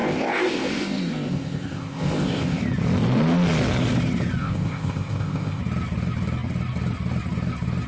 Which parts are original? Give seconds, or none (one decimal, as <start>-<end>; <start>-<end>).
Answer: 2.6-4.4; 5.6-7.9